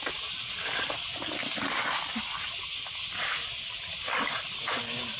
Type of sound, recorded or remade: recorded